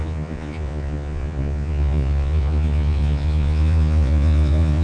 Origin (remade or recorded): remade